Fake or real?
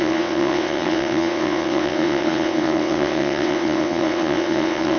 fake